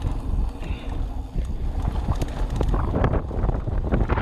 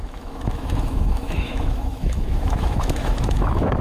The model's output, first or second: second